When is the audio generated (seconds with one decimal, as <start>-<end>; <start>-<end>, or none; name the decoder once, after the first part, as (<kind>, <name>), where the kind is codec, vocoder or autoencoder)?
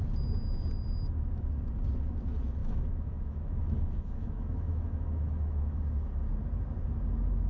2.6-5.8 (autoencoder, DAC-VAE)